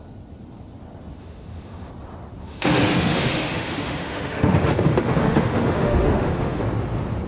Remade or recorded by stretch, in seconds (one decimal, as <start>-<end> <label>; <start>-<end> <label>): 0.0-1.2 recorded; 1.2-1.9 remade; 1.9-2.4 recorded; 2.4-6.6 remade; 6.6-7.3 recorded